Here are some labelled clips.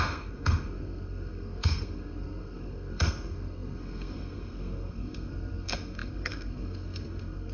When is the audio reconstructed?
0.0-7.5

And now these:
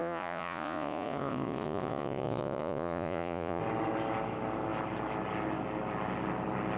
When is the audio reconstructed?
0.0-3.6

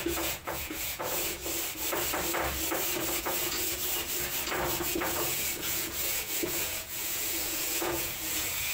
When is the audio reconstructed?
0.0-1.4; 3.2-3.8; 4.8-8.7

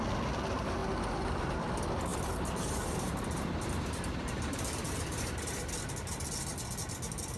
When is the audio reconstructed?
2.1-5.7

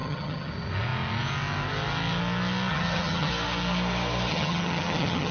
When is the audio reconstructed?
0.0-0.5; 2.7-3.3; 4.3-5.3

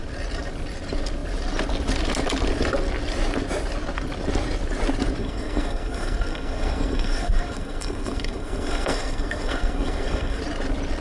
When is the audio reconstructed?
5.2-10.4

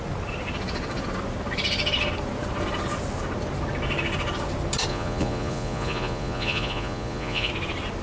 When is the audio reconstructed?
4.9-7.5

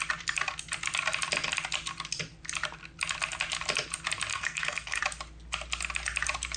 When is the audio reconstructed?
4.3-5.0